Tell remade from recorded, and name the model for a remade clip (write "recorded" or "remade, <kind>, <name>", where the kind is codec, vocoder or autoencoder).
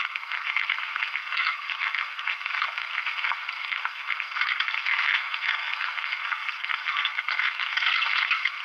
remade, codec, SNAC